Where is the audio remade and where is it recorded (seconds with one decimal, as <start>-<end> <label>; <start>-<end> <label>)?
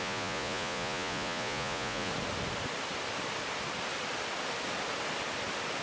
0.0-2.1 remade; 2.1-5.8 recorded